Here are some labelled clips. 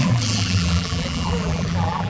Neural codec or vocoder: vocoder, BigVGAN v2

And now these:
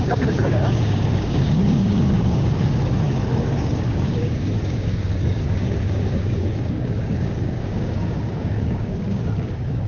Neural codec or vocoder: codec, DAC